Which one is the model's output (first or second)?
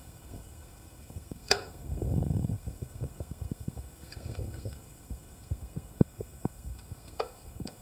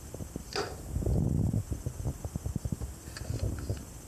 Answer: first